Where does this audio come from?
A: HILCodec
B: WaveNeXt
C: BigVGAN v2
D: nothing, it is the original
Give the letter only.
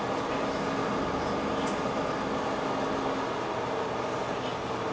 D